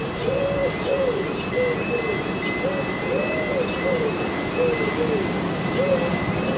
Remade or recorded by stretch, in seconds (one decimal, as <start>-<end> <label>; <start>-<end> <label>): 0.0-6.6 recorded